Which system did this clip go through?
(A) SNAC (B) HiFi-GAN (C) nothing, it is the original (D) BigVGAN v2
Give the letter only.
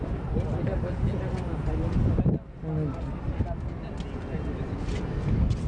C